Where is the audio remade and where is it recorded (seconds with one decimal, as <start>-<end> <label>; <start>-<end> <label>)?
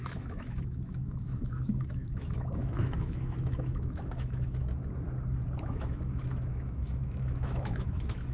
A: 0.0-4.6 remade; 4.6-5.6 recorded; 5.6-8.3 remade